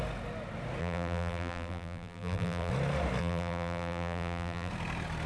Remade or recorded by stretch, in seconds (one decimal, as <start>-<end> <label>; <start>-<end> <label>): 0.0-0.8 recorded; 0.8-2.7 remade; 2.7-3.2 recorded; 3.2-4.7 remade; 4.7-5.3 recorded